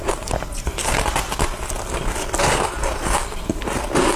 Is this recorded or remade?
recorded